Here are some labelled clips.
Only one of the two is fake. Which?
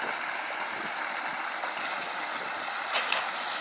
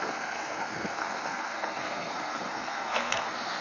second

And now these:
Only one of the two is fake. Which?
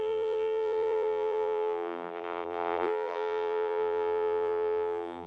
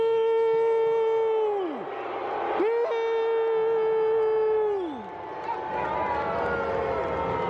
first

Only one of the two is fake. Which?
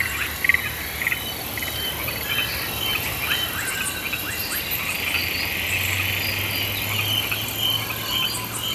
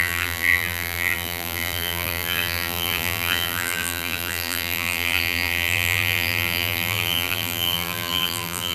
second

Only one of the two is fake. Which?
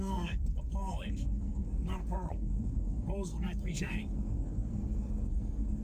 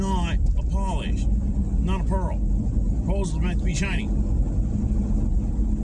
first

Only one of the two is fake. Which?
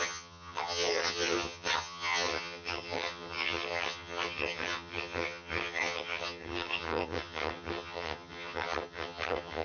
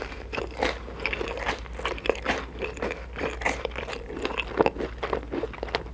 first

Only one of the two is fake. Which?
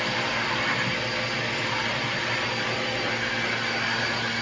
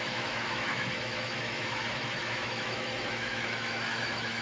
second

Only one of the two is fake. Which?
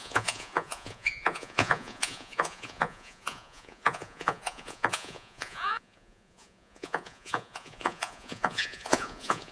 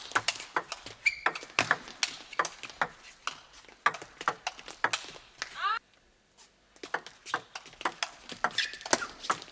first